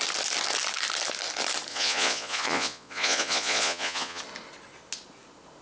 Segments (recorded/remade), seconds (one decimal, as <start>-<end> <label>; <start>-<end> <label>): 0.0-1.7 recorded; 1.7-4.2 remade; 4.2-5.6 recorded